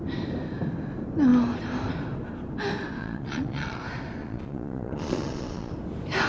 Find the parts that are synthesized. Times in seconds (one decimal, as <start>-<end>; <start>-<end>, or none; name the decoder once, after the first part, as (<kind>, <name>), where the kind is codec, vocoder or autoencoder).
3.0-3.8 (vocoder, Vocos); 4.2-5.7